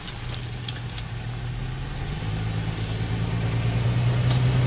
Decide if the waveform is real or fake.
real